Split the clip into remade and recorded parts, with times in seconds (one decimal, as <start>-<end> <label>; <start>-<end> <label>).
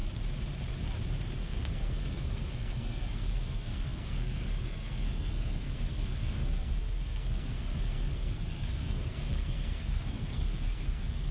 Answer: 0.0-1.4 recorded; 1.4-11.3 remade